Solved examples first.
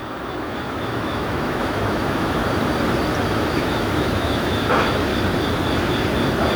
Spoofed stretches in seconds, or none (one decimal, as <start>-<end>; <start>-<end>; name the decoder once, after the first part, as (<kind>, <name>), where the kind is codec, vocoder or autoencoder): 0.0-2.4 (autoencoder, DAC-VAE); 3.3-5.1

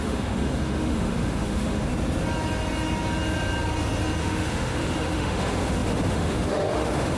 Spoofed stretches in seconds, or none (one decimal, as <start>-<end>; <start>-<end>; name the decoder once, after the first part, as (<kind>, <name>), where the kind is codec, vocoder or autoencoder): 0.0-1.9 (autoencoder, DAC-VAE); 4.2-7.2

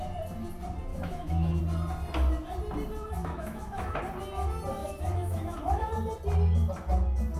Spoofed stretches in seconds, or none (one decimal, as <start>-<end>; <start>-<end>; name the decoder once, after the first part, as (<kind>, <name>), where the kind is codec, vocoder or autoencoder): 0.9-1.6 (autoencoder, DAC-VAE); 3.2-4.0; 4.8-5.9

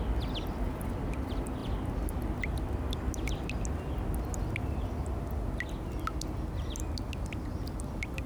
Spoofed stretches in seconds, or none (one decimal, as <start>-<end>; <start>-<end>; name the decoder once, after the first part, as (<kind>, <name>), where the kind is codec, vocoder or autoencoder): none

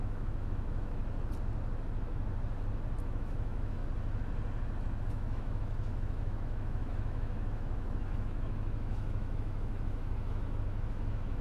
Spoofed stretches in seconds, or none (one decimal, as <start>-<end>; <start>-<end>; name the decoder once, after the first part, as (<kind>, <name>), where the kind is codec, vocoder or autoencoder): 0.0-1.0 (autoencoder, DAC-VAE); 3.0-3.8; 5.0-11.4